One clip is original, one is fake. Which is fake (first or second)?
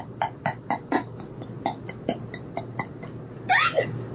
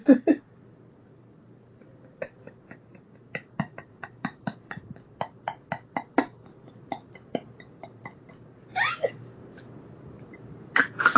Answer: second